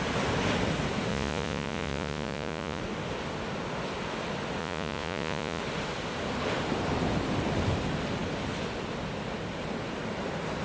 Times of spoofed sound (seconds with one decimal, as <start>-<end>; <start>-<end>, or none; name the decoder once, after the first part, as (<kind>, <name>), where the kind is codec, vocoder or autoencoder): 1.1-2.8 (vocoder, Vocos); 4.6-5.6